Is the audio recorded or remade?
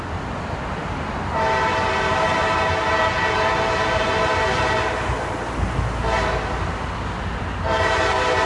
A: recorded